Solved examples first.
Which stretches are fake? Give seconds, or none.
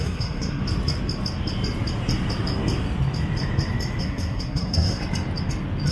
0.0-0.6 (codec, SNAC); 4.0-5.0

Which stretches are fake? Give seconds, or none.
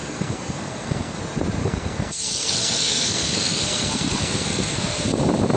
0.0-1.2 (codec, SNAC); 1.6-5.0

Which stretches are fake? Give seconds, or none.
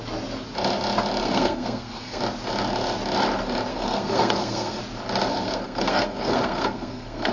1.2-2.2 (codec, SNAC); 3.7-4.8; 5.3-7.3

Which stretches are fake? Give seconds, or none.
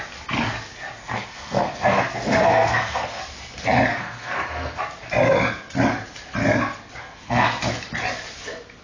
1.0-3.2 (codec, SNAC); 3.9-4.8; 7.0-7.6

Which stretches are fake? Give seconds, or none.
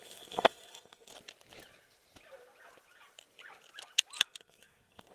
0.0-1.1 (codec, SNAC); 4.2-5.1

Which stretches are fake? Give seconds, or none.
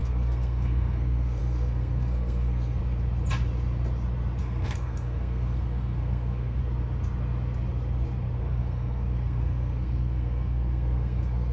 0.0-2.8 (codec, SNAC); 4.4-6.6; 8.4-11.5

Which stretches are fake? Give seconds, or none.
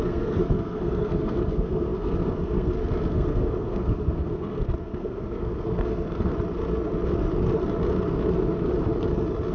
0.0-6.3 (codec, SNAC)